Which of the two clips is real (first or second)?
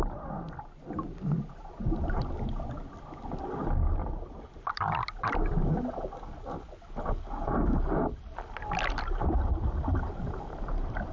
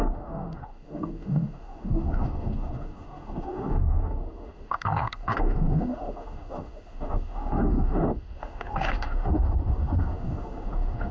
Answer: first